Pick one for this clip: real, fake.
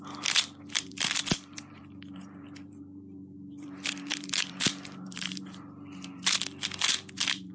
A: fake